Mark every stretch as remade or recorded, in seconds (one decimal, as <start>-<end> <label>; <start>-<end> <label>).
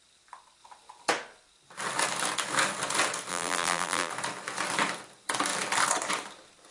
0.0-3.3 recorded; 3.3-4.1 remade; 4.1-6.7 recorded